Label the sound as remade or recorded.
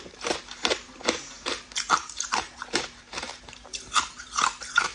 remade